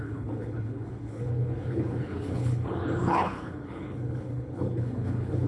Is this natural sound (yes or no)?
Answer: no